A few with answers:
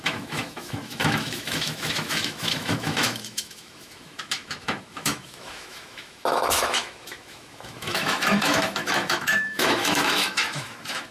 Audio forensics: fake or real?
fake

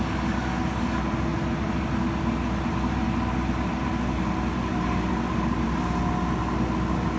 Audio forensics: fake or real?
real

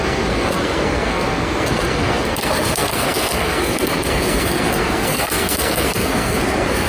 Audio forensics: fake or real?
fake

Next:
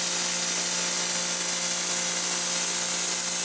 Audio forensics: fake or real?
real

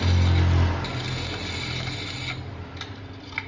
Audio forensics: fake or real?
real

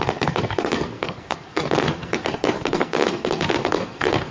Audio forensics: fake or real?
fake